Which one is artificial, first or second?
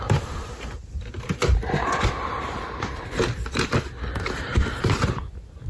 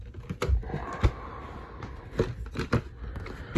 first